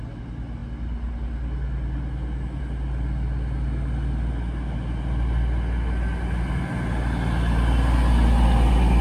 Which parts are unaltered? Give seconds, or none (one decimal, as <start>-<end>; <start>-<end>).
0.0-9.0